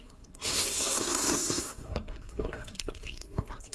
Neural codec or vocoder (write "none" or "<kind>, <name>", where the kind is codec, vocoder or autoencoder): codec, SNAC